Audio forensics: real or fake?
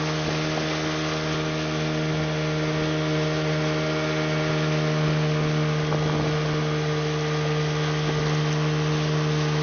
real